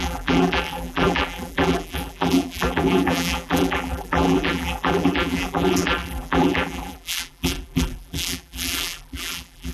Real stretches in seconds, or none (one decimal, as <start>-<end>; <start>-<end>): none